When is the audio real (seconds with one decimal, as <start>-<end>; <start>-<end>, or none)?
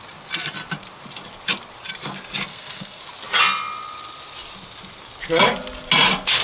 0.0-2.5; 3.0-6.4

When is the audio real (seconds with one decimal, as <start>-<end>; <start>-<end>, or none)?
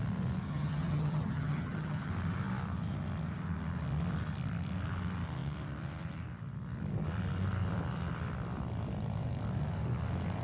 0.0-0.4; 2.1-10.4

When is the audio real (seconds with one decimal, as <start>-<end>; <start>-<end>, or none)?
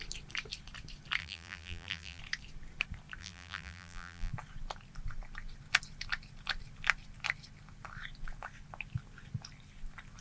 0.0-1.2; 2.2-3.2; 4.3-10.2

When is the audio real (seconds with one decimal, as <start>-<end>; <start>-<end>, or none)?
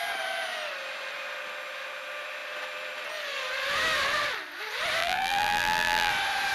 0.0-5.0; 6.1-6.5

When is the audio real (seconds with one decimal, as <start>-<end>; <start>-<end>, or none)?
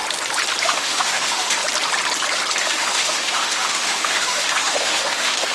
0.0-0.6; 1.6-2.6